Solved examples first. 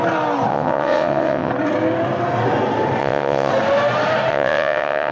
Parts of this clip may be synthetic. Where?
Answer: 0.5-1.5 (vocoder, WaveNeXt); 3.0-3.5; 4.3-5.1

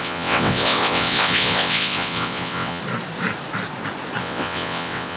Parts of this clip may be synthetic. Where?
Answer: 0.0-2.8 (vocoder, WaveNeXt); 4.2-5.2

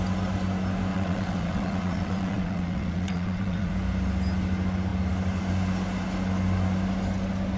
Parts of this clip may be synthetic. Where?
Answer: 0.9-3.7 (vocoder, WaveNeXt)

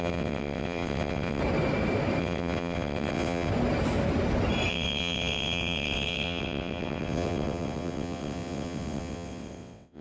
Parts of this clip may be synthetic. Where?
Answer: 0.0-1.4 (vocoder, WaveNeXt); 2.2-3.5; 4.7-10.0

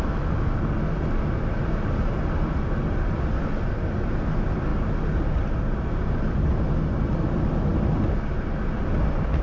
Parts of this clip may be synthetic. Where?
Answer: none

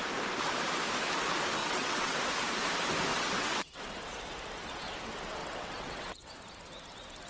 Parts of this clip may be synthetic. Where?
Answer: 1.6-2.2 (vocoder, WaveNeXt); 3.1-3.8; 5.4-6.3